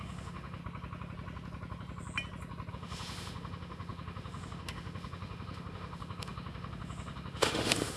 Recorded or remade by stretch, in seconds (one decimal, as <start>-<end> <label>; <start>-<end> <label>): 0.0-0.6 remade; 0.6-2.7 recorded; 2.7-8.0 remade